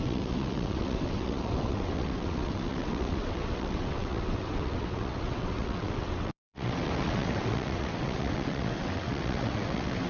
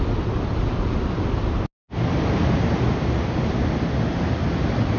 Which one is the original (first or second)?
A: second